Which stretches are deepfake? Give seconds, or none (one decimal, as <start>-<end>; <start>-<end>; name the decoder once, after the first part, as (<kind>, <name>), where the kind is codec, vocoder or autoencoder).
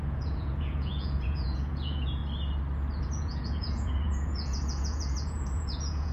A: 0.0-2.2 (vocoder, Vocos); 3.0-6.1